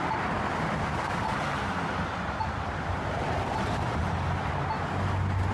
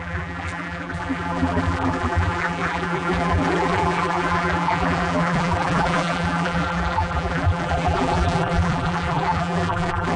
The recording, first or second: first